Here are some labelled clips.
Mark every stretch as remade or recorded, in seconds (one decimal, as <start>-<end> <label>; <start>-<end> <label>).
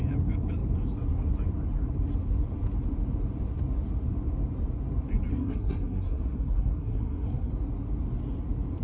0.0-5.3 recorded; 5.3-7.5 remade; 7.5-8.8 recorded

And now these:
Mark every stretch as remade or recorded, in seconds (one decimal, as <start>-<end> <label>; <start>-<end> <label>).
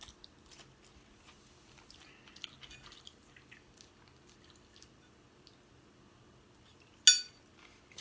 0.0-8.0 recorded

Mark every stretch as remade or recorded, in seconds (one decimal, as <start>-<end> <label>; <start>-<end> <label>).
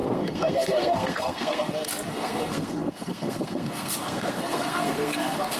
0.0-1.7 remade; 1.7-2.1 recorded; 2.1-5.6 remade